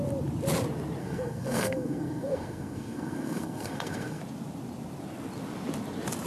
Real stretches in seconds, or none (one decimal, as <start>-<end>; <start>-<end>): 0.0-1.0; 4.2-6.3